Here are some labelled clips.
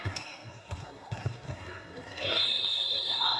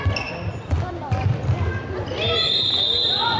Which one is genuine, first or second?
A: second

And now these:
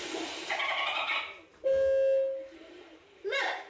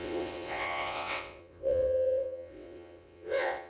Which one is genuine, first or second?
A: first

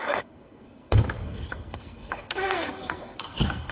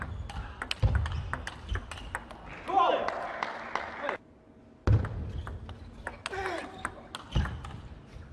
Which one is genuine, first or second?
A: second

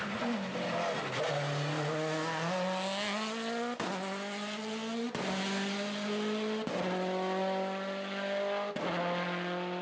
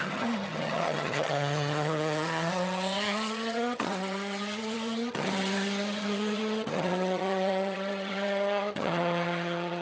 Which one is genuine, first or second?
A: first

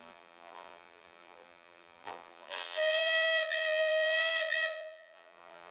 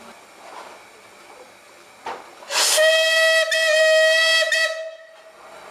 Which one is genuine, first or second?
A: second